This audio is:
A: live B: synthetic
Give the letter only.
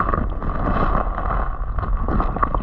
A